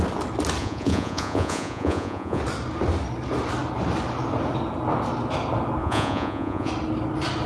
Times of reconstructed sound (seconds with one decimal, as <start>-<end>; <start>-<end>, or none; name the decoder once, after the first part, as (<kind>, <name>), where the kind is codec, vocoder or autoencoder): 0.6-2.4 (vocoder, Vocos); 5.8-6.7